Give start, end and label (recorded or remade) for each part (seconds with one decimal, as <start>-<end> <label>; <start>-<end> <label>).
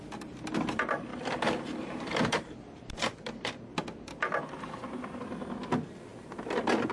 0.0-6.9 recorded